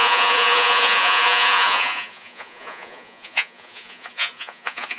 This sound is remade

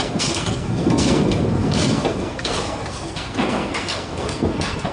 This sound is remade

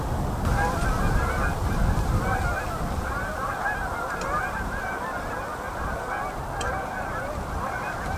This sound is recorded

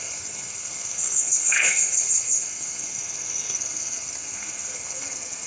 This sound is remade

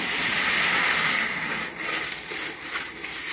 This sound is recorded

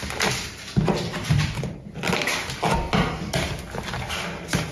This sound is recorded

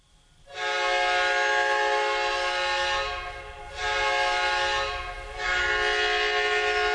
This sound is recorded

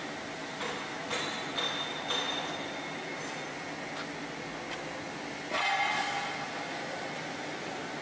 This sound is recorded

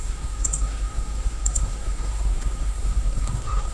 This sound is remade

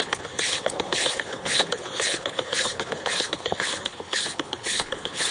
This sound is remade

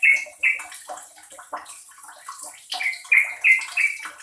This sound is recorded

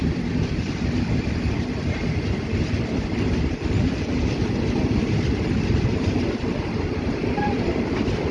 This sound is remade